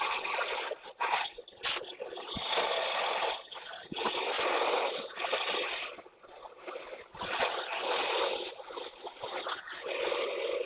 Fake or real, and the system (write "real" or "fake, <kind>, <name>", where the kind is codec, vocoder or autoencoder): real